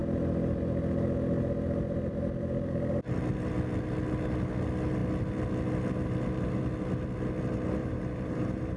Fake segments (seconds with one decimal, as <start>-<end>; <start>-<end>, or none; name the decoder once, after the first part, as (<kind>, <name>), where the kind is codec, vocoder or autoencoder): 7.8-8.8 (vocoder, BigVGAN v2)